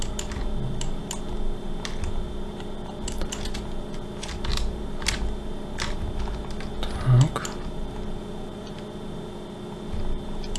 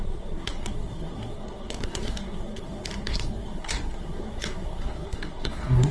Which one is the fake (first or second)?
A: second